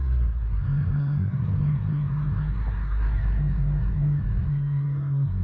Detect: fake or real fake